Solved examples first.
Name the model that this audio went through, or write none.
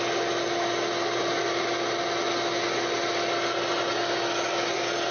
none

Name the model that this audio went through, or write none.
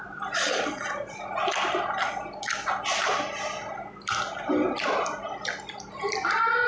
none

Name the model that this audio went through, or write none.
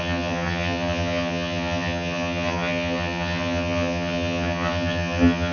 vocoder, HiFi-GAN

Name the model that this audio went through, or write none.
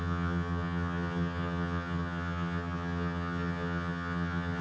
vocoder, HiFi-GAN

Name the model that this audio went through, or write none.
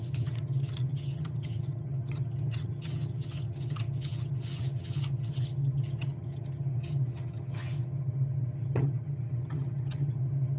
vocoder, HiFi-GAN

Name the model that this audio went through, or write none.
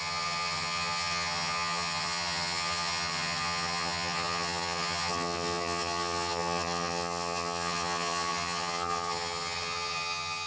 vocoder, HiFi-GAN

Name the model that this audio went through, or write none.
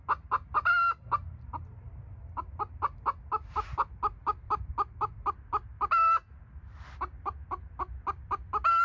none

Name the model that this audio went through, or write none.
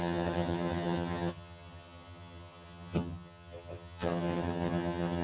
vocoder, HiFi-GAN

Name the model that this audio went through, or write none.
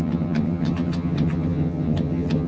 vocoder, HiFi-GAN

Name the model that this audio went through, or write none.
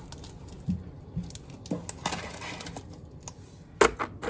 none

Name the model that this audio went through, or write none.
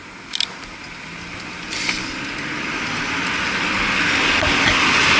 none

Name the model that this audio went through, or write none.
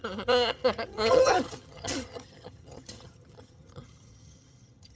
vocoder, HiFi-GAN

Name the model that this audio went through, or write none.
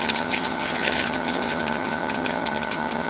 vocoder, HiFi-GAN